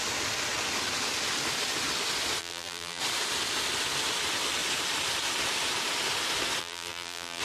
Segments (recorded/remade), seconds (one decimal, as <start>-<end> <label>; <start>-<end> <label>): 0.0-2.4 recorded; 2.4-3.0 remade; 3.0-6.6 recorded; 6.6-7.4 remade